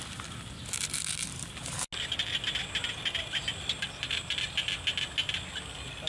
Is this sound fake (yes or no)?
no